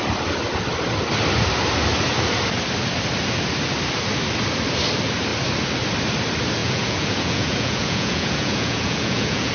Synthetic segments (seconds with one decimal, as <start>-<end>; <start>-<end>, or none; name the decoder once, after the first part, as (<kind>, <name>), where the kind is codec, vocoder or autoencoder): 6.6-9.5 (vocoder, Vocos)